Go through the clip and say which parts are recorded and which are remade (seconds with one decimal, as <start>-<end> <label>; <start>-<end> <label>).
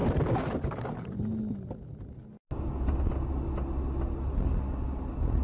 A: 0.0-5.4 recorded